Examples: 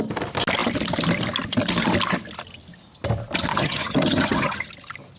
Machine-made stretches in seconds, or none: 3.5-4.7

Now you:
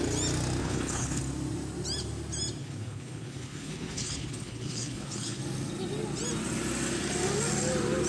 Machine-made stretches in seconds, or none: 0.6-1.2; 2.6-5.4

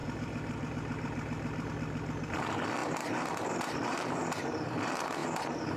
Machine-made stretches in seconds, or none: 0.0-1.7; 2.8-4.7; 5.2-5.8